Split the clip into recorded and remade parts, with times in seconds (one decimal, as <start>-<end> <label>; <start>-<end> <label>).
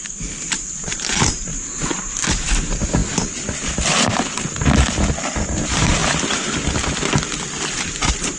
0.0-1.5 remade; 1.5-2.3 recorded; 2.3-3.0 remade; 3.0-5.4 recorded; 5.4-6.0 remade; 6.0-7.8 recorded; 7.8-8.4 remade